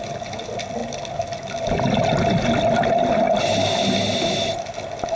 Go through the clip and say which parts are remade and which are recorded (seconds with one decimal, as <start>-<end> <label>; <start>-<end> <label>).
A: 0.0-5.2 recorded